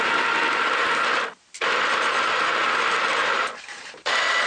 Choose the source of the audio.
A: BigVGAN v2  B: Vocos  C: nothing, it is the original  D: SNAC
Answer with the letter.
C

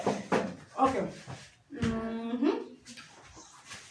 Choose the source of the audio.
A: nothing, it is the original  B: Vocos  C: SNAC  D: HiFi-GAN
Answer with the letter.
A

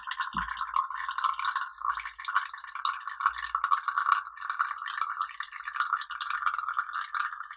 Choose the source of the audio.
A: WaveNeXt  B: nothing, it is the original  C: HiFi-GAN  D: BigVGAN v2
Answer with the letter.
B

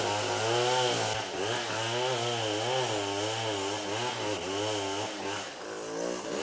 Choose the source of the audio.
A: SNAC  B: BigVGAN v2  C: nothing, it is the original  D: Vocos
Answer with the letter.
C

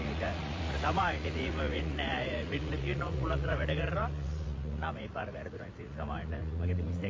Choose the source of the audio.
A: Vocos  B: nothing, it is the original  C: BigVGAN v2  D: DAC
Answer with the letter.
A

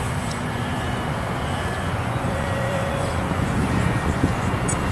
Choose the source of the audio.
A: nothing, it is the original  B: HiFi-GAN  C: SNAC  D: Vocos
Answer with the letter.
D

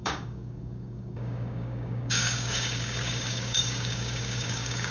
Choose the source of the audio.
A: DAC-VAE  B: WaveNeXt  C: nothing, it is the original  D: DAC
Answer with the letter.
D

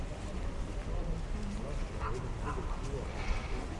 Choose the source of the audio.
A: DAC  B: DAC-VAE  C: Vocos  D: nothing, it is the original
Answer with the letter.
D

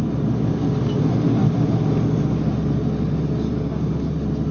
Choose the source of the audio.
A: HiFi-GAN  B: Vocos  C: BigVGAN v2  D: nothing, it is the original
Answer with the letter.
D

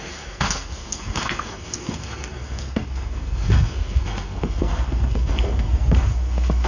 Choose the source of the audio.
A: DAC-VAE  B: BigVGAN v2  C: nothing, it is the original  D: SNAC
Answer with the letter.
D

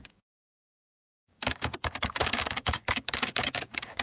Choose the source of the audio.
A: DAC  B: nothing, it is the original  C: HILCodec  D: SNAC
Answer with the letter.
A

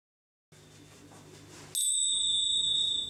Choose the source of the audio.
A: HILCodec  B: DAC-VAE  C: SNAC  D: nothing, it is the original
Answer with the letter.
D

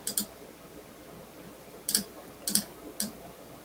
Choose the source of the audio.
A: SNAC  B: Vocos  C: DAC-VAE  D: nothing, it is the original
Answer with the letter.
D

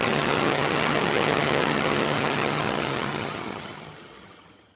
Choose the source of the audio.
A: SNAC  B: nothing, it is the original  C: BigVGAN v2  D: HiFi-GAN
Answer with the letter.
D